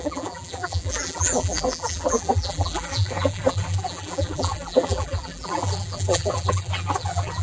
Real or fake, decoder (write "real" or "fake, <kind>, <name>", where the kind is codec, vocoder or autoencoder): fake, vocoder, BigVGAN v2